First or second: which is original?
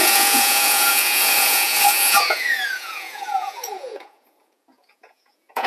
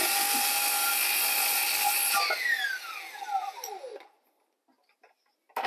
second